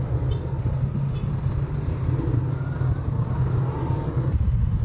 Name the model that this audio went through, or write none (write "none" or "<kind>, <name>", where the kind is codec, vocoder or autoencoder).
none